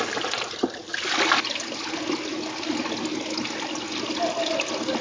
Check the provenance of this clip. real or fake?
real